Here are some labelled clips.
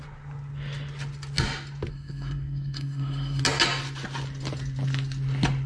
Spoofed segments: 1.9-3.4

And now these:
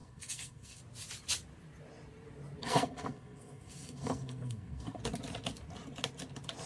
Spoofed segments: 0.0-0.8; 2.6-5.0

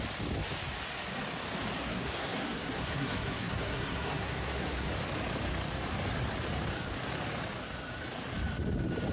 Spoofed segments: 1.8-4.9

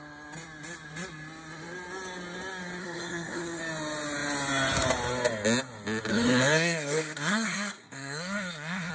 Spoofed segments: 2.8-3.6; 6.1-8.9

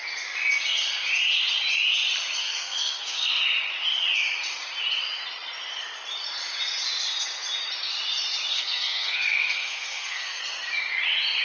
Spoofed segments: 2.4-3.4; 8.5-10.4